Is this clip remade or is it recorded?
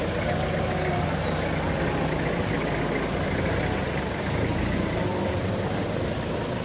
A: recorded